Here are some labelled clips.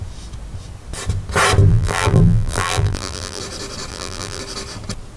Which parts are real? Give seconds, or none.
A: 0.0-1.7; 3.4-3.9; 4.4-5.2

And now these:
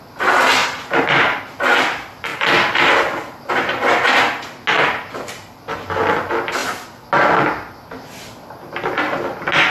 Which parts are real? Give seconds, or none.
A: 0.0-0.6; 1.4-2.3; 2.9-9.7

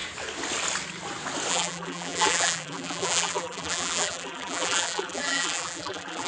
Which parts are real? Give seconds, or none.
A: 0.0-1.5